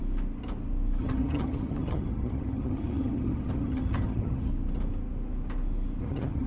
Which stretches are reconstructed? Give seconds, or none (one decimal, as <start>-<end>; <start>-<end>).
1.0-4.5; 6.0-6.5